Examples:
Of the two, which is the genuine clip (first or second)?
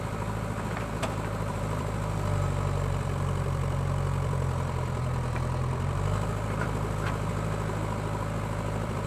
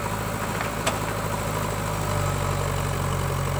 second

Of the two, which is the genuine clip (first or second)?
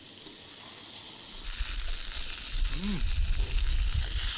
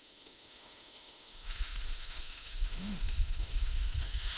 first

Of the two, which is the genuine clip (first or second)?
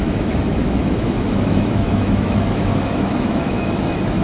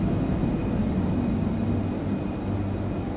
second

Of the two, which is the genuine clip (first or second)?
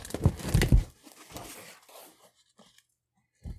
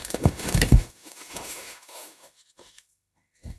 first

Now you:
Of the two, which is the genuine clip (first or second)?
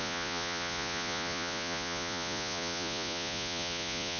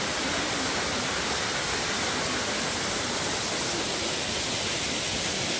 second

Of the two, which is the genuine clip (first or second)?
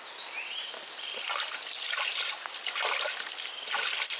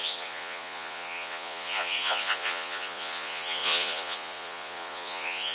first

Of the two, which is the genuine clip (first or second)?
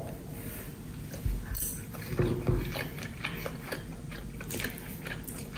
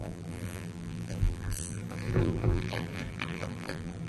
first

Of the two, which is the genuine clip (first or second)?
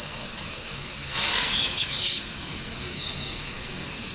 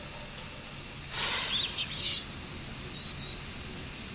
second